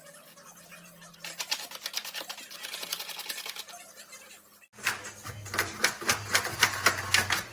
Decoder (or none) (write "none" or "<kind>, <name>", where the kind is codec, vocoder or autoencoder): none